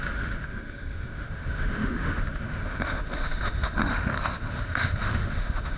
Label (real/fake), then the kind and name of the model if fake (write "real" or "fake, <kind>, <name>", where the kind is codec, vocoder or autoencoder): fake, autoencoder, DAC-VAE